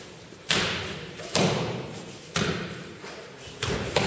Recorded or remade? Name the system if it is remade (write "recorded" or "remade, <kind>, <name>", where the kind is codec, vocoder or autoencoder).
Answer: remade, vocoder, BigVGAN v2